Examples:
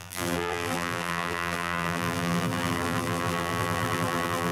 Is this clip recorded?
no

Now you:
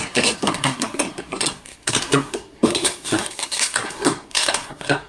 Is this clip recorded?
no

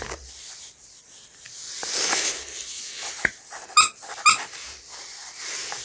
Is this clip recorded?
yes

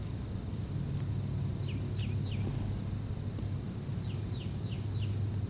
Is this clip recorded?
yes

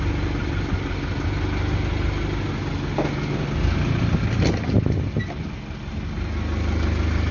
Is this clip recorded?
yes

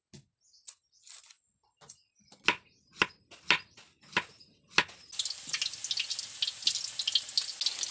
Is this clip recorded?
yes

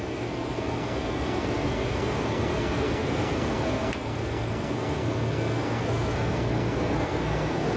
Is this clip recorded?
no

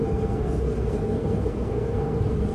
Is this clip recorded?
no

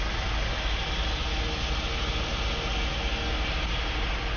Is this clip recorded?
yes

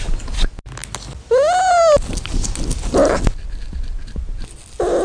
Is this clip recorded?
yes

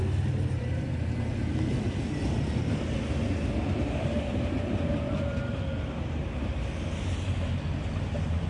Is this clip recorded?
yes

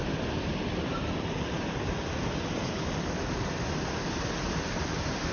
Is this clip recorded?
yes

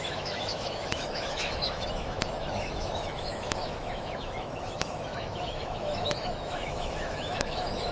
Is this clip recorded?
no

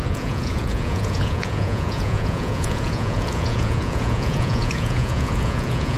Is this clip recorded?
no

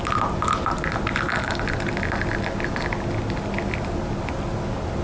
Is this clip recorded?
yes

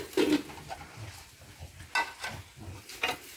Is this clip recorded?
yes